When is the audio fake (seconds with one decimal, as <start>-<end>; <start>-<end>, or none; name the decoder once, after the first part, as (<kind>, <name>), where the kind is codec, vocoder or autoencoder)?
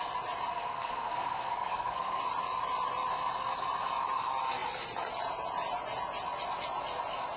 0.5-2.2 (codec, SNAC)